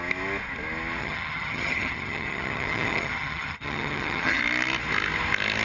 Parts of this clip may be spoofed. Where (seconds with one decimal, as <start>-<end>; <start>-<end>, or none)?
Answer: 1.0-4.4